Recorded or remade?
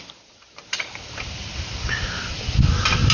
recorded